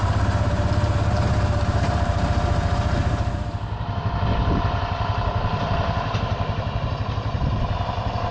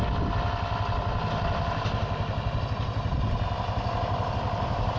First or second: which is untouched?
second